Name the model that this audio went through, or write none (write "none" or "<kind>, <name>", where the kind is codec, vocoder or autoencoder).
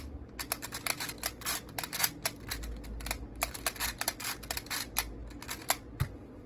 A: none